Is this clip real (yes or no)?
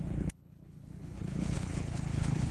no